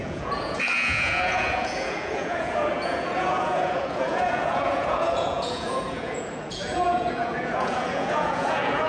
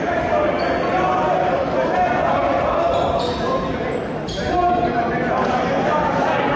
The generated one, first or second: first